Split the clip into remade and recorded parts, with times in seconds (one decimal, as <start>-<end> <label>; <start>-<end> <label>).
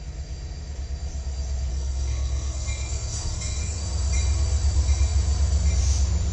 0.0-1.7 recorded; 1.7-3.8 remade; 3.8-6.3 recorded